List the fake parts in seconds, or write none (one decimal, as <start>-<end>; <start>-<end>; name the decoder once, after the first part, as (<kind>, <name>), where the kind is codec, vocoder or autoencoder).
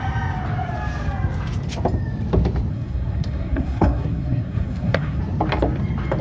2.7-5.2 (codec, SNAC)